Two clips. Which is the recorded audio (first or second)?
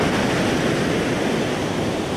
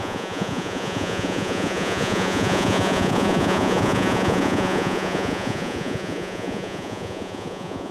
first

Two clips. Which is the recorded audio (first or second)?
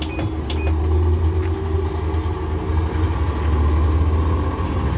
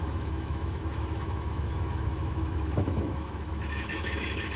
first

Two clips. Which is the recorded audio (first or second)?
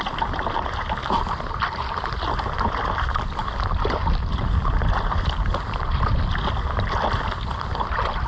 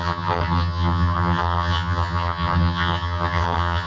first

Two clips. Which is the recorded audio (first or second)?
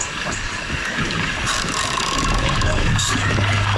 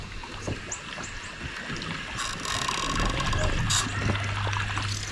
second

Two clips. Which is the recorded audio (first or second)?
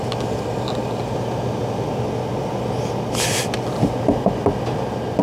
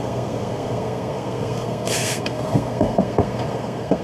first